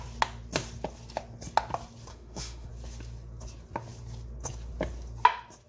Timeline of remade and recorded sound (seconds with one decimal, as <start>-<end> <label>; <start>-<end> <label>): 0.0-2.1 recorded; 2.1-2.7 remade; 2.7-5.7 recorded